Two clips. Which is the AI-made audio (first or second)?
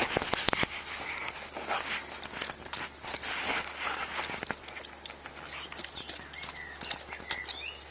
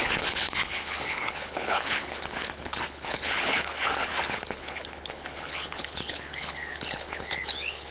second